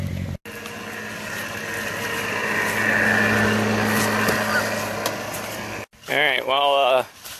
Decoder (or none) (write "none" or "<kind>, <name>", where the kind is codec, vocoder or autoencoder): none